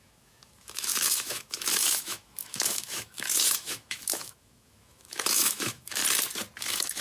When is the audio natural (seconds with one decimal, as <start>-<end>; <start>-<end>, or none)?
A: 6.0-6.6